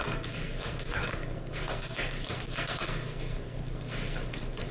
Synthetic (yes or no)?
yes